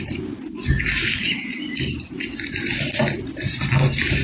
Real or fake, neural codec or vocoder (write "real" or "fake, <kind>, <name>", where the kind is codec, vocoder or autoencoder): real